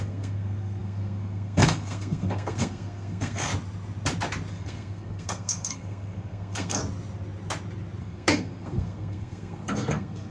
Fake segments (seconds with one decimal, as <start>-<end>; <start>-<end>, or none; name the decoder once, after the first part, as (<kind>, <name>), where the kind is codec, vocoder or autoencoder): 0.0-3.5 (codec, SNAC); 4.5-6.8; 8.0-10.3